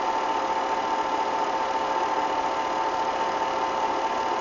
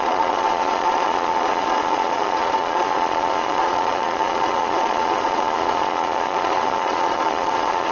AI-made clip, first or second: second